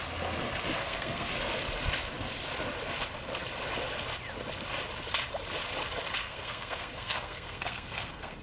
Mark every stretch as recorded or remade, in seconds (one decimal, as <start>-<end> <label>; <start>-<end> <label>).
0.0-0.8 recorded; 0.8-1.3 remade; 1.3-6.2 recorded; 6.2-8.4 remade